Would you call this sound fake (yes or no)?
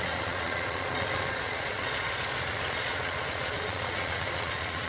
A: yes